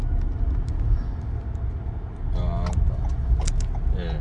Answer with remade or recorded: recorded